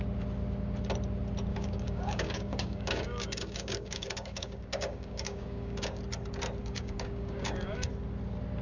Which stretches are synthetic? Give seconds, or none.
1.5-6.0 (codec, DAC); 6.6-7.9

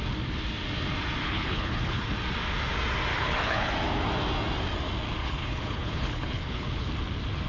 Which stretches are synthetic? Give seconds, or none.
1.2-2.0 (codec, HILCodec); 3.1-3.7; 5.2-6.9